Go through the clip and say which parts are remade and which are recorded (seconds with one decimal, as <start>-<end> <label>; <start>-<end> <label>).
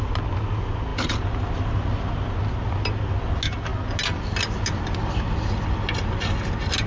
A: 0.0-6.9 recorded